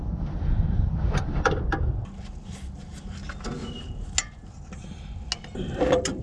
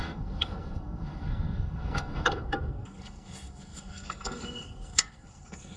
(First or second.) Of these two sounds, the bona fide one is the first